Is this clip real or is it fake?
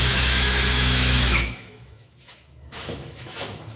fake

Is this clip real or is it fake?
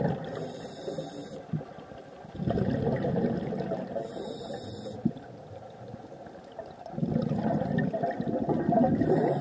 real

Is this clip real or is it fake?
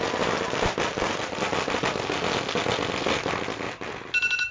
real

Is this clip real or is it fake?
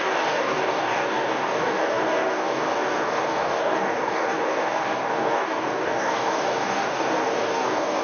fake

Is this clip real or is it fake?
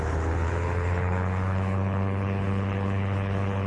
fake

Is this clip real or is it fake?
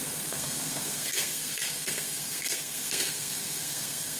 fake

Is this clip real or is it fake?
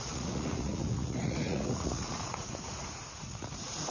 fake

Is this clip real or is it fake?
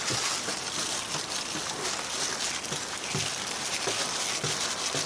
real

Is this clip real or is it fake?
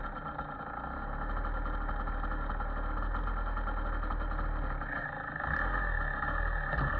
real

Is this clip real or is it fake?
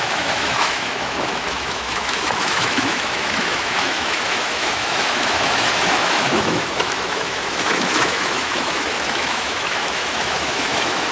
fake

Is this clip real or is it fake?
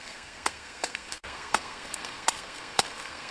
fake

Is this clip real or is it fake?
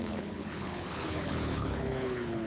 fake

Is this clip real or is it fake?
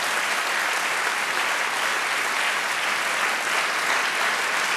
real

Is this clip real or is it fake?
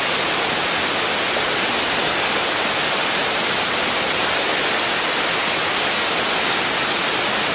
real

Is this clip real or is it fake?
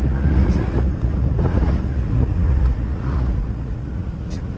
fake